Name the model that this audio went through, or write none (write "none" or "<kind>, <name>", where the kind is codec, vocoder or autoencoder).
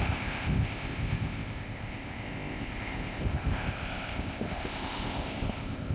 codec, ZipCodec